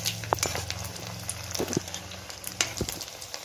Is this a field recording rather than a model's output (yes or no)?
yes